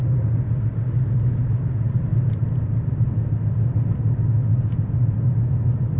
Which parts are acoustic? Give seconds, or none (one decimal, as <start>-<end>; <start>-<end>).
0.0-6.0